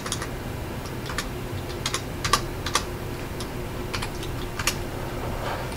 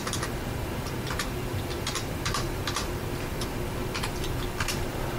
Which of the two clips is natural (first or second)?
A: first